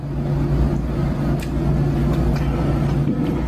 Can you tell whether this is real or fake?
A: real